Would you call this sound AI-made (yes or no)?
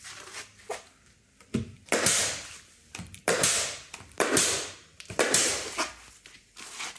yes